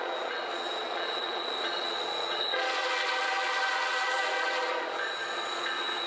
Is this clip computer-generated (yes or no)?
yes